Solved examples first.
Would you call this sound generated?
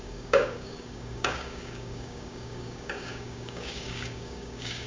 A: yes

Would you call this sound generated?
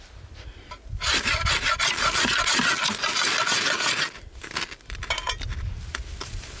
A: no